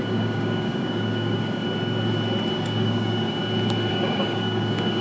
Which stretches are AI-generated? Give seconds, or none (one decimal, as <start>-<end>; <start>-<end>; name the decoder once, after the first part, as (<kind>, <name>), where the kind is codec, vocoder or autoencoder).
0.0-1.6 (codec, DAC); 2.5-3.4; 3.9-5.0

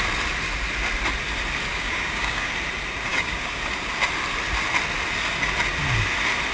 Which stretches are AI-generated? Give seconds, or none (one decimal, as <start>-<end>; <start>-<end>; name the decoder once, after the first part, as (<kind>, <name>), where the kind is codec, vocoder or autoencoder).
1.7-2.5 (codec, DAC); 3.1-3.6

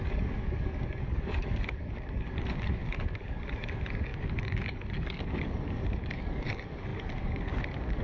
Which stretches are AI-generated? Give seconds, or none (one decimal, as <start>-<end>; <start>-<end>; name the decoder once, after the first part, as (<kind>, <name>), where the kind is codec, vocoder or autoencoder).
0.0-8.0 (codec, DAC)

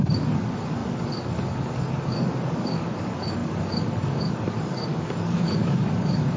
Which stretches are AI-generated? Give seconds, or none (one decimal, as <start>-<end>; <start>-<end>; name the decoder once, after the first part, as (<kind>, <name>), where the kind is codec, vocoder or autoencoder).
0.0-6.4 (codec, DAC)

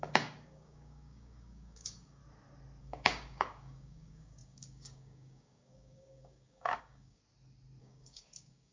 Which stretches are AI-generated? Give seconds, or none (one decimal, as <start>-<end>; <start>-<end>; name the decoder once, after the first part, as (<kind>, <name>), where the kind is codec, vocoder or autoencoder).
0.0-2.2 (codec, DAC); 2.8-7.2; 7.8-8.7

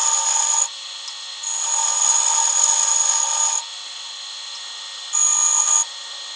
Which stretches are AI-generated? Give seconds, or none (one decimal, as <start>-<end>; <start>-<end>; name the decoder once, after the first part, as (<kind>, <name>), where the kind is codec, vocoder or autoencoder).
none

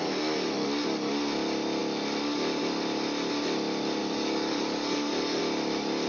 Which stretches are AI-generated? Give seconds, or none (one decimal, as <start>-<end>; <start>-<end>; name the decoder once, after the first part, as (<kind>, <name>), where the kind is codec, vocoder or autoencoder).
4.0-5.4 (codec, DAC)